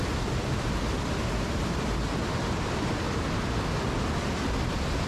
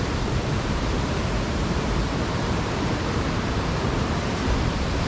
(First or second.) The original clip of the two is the first